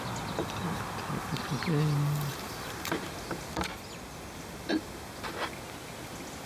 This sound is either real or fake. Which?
real